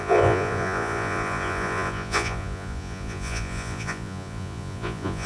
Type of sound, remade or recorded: remade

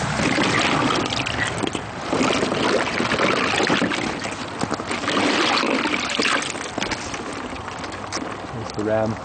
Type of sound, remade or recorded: recorded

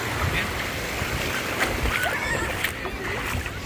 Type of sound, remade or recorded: recorded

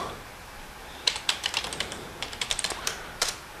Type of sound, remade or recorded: remade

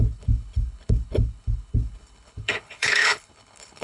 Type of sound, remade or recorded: remade